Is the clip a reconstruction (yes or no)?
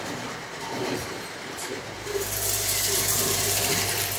yes